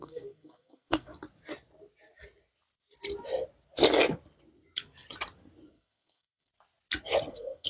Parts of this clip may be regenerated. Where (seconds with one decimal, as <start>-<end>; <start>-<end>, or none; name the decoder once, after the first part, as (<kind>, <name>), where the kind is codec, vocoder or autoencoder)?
0.0-1.1 (codec, SNAC); 5.7-6.5; 7.3-7.7